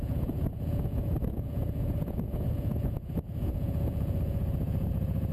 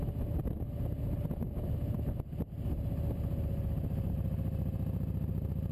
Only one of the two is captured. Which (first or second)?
second